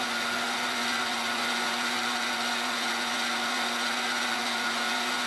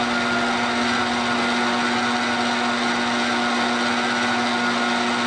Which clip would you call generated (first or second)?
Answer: first